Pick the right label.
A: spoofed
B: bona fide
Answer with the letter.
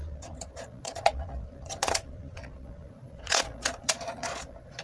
A